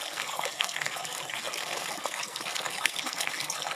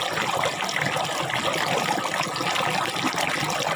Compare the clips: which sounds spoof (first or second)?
first